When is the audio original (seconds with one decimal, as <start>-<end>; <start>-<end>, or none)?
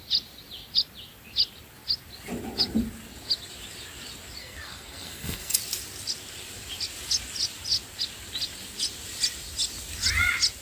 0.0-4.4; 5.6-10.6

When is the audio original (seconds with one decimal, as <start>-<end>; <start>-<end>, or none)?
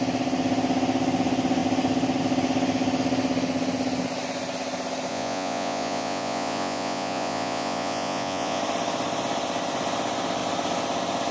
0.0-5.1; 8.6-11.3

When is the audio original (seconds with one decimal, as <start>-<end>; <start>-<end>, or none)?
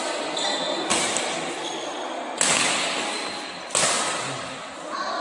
0.0-5.2